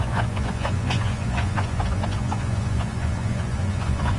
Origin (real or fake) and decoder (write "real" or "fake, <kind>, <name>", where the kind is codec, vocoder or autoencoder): fake, vocoder, Vocos